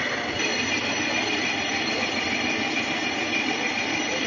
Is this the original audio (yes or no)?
no